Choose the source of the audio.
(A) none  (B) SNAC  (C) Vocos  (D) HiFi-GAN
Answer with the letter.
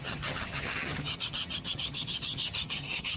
D